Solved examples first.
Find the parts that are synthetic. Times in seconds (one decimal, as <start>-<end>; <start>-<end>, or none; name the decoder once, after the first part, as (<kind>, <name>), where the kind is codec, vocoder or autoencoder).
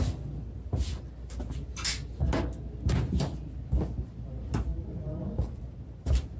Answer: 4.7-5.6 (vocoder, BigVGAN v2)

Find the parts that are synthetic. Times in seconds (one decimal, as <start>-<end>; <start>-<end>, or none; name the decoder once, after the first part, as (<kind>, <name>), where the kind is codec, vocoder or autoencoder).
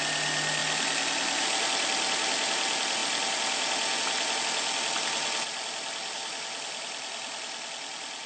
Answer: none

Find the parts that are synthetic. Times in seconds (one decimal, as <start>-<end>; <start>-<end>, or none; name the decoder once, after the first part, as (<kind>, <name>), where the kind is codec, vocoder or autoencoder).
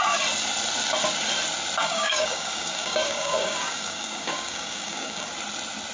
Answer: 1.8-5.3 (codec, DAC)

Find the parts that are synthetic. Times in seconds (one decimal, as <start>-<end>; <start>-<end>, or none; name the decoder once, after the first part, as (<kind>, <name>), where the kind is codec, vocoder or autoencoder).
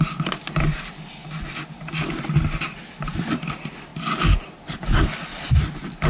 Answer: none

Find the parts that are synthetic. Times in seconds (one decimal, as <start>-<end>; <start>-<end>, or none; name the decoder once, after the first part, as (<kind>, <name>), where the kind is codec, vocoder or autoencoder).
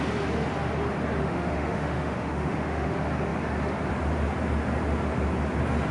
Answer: 1.2-2.9 (autoencoder, DAC-VAE)